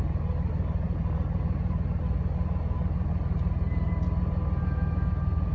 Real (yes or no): yes